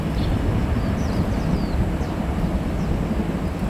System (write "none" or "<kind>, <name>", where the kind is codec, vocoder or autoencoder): none